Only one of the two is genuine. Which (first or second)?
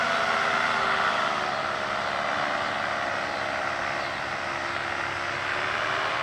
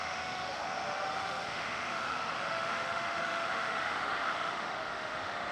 first